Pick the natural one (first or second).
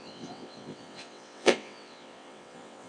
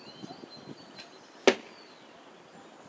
second